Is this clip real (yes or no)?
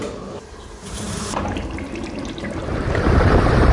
no